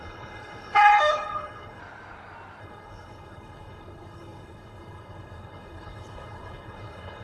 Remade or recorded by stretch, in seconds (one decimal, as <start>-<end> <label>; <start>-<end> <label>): 0.0-1.8 remade; 1.8-2.6 recorded; 2.6-7.2 remade